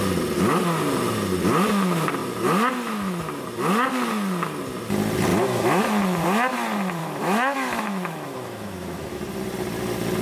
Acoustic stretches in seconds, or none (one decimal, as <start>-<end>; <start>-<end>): 0.0-5.3; 5.8-7.0; 9.2-10.2

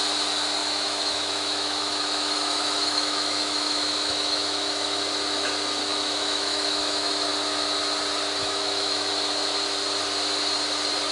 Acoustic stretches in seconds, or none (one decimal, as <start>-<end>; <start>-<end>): 0.0-0.6; 5.0-5.9; 7.3-8.4; 9.1-11.1